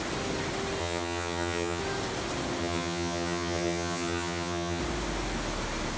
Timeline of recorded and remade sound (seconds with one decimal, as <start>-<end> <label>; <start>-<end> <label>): 0.0-0.8 recorded; 0.8-1.8 remade; 1.8-2.6 recorded; 2.6-4.8 remade; 4.8-6.0 recorded